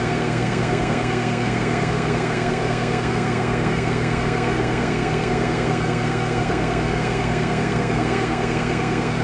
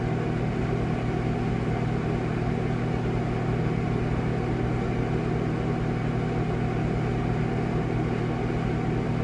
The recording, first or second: second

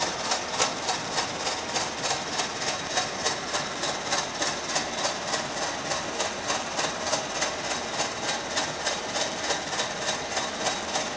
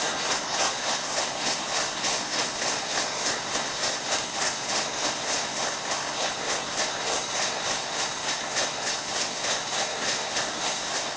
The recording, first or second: first